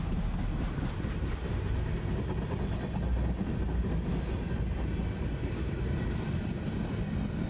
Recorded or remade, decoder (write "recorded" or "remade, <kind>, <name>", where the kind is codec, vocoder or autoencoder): recorded